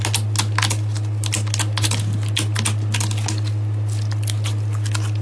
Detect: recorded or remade recorded